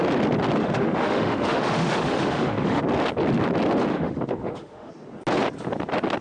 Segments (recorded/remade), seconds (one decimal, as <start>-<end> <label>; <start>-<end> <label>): 0.0-0.6 recorded; 0.6-2.8 remade; 2.8-3.9 recorded; 3.9-4.9 remade; 4.9-6.2 recorded

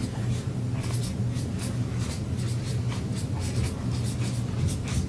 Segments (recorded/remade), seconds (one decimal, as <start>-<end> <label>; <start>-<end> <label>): 0.0-5.1 recorded

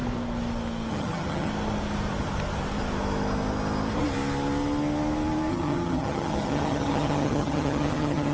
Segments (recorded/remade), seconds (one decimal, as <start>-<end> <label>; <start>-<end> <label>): 0.0-0.9 recorded; 0.9-1.5 remade; 1.5-5.5 recorded; 5.5-8.3 remade

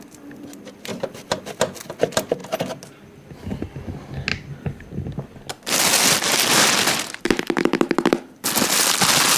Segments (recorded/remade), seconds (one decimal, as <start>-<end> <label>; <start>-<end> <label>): 0.0-9.4 recorded

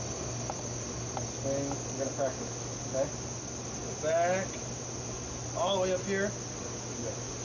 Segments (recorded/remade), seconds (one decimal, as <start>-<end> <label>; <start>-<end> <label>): 0.0-7.4 recorded

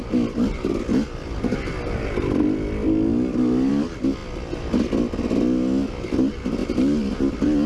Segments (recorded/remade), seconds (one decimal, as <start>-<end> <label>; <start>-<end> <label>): 0.0-7.7 recorded